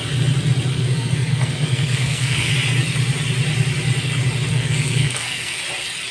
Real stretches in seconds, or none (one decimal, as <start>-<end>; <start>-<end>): 0.0-0.7; 2.5-4.5; 5.6-6.1